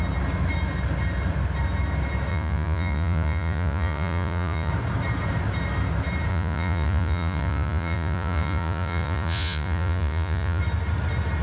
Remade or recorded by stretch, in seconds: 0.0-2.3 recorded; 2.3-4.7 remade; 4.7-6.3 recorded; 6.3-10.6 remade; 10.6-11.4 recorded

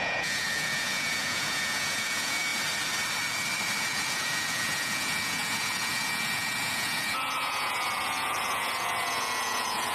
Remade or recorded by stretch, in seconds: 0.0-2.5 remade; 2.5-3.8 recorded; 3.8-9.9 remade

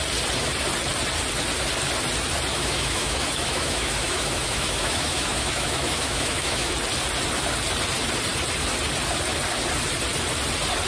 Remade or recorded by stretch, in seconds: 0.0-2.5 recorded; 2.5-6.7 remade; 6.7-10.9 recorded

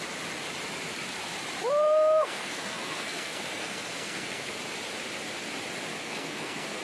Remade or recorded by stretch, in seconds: 0.0-1.8 recorded; 1.8-4.6 remade; 4.6-6.0 recorded; 6.0-6.8 remade

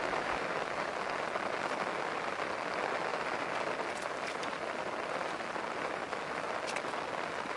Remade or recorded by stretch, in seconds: 0.0-7.6 recorded

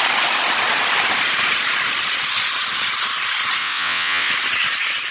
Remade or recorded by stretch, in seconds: 0.0-3.6 recorded; 3.6-4.3 remade; 4.3-5.1 recorded

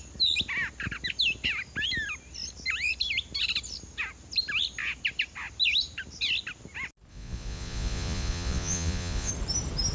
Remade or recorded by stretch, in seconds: 0.0-7.1 recorded; 7.1-9.3 remade; 9.3-9.9 recorded

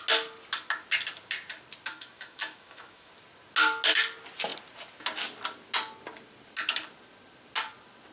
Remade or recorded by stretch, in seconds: 0.0-1.9 recorded; 1.9-3.1 remade; 3.1-8.1 recorded